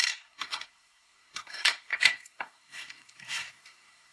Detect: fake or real fake